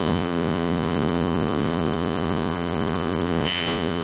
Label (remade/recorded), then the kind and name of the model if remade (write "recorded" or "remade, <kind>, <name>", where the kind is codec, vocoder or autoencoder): remade, vocoder, Vocos